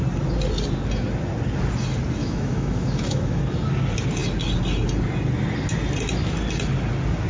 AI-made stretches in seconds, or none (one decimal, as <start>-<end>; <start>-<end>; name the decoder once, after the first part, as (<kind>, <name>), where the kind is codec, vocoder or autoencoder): 2.2-3.4 (autoencoder, DAC-VAE)